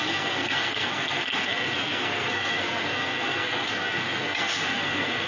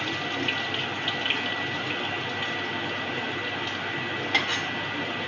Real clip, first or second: second